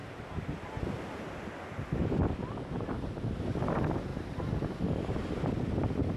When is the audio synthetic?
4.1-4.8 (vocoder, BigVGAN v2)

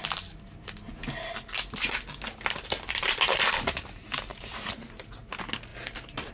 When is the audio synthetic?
4.3-5.3 (vocoder, BigVGAN v2); 5.7-6.3

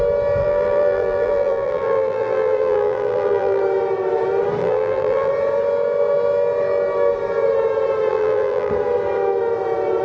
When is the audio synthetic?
0.4-3.6 (vocoder, BigVGAN v2); 4.6-5.3; 8.1-8.7

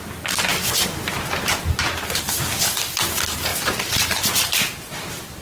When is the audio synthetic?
0.5-1.0 (vocoder, BigVGAN v2); 3.5-5.4